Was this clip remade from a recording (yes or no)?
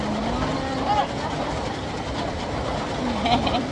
no